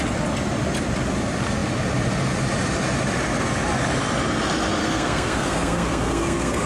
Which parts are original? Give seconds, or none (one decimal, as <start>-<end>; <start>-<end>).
0.0-4.8